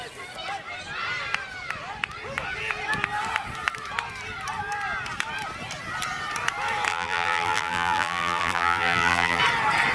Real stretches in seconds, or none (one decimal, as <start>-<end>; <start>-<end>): 0.0-6.9; 9.4-9.9